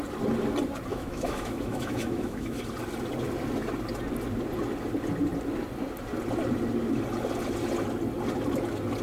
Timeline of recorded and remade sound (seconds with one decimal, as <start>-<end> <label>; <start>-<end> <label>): 0.0-0.9 recorded; 0.9-2.6 remade; 2.6-9.0 recorded

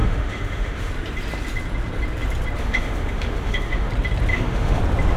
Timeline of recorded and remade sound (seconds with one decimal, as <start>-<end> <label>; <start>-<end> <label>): 0.0-0.9 remade; 0.9-2.6 recorded; 2.6-3.9 remade; 3.9-4.3 recorded; 4.3-4.8 remade; 4.8-5.2 recorded

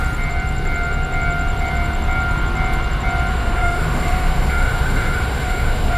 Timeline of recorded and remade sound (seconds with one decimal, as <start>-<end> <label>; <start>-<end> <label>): 0.0-3.3 recorded; 3.3-6.0 remade

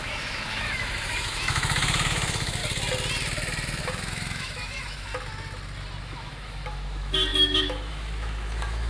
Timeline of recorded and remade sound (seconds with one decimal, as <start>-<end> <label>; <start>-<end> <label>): 0.0-2.6 remade; 2.6-3.8 recorded; 3.8-5.1 remade; 5.1-6.0 recorded; 6.0-8.9 remade

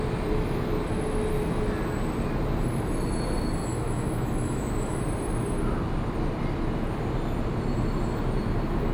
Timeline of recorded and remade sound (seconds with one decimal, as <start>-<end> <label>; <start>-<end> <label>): 0.0-3.6 recorded; 3.6-5.0 remade; 5.0-8.9 recorded

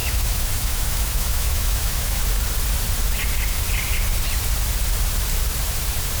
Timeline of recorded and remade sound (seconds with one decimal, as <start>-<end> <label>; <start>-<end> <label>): 0.0-2.2 remade; 2.2-6.2 recorded

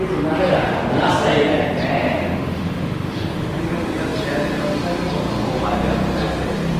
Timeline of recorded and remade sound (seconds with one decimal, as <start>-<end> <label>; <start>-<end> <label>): 0.0-0.5 recorded; 0.5-1.1 remade; 1.1-1.9 recorded; 1.9-3.6 remade; 3.6-6.8 recorded